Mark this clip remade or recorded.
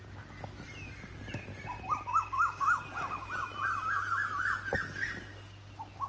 recorded